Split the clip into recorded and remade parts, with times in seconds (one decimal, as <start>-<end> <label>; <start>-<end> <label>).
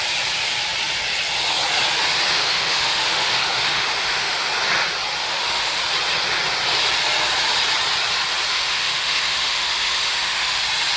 0.0-2.3 recorded; 2.3-4.5 remade; 4.5-5.2 recorded; 5.2-5.8 remade; 5.8-8.5 recorded; 8.5-10.6 remade; 10.6-11.0 recorded